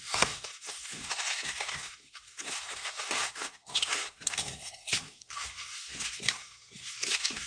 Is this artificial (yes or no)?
yes